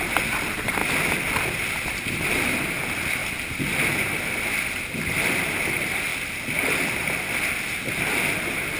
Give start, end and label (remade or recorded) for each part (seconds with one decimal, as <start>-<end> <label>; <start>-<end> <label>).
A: 0.0-0.8 remade; 0.8-2.1 recorded; 2.1-6.1 remade; 6.1-7.9 recorded; 7.9-8.8 remade